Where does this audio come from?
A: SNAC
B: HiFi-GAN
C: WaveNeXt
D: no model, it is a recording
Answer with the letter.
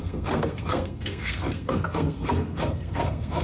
A